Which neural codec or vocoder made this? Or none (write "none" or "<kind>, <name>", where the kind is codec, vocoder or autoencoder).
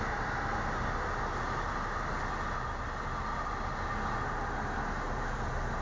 none